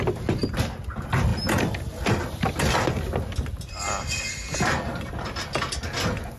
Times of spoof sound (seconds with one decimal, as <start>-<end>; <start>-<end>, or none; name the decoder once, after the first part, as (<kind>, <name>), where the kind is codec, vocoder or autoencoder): none